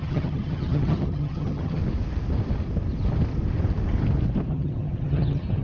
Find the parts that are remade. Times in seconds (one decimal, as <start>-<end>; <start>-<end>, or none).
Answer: 0.0-1.8; 4.5-5.6